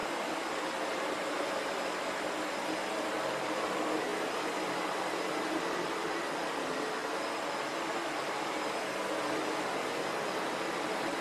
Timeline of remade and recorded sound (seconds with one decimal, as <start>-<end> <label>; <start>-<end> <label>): 0.0-11.2 recorded